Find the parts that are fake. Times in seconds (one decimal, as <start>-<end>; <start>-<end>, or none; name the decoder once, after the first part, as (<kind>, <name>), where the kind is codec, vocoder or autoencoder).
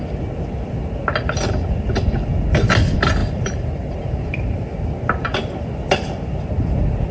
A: 3.2-4.6 (vocoder, BigVGAN v2)